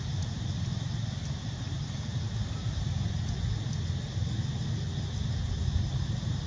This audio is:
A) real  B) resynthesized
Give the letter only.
A